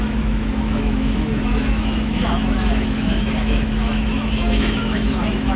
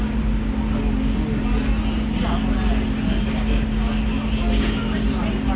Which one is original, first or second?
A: second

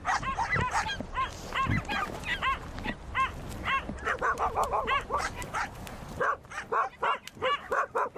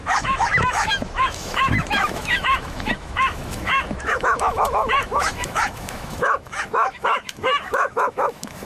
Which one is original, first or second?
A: first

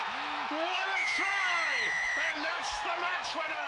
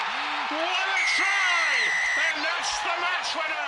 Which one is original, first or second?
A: second